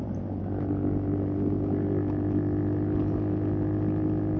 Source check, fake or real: real